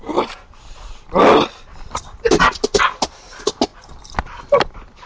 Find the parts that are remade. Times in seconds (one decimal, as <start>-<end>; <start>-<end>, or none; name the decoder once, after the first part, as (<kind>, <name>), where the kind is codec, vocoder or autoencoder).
none